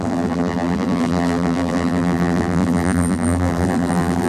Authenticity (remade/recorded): remade